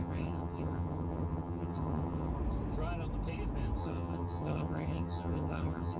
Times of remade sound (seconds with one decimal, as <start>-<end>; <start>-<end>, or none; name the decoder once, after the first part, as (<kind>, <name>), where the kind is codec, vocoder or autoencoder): 0.0-2.3 (vocoder, HiFi-GAN); 3.8-6.0